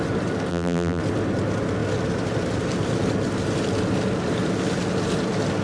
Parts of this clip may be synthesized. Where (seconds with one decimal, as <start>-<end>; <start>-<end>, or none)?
0.5-1.0